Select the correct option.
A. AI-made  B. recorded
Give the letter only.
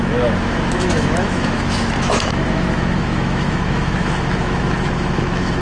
A